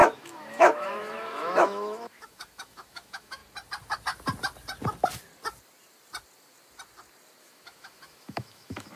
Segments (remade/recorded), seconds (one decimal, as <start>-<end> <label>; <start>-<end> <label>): 0.0-3.4 remade; 3.4-7.4 recorded; 7.4-9.0 remade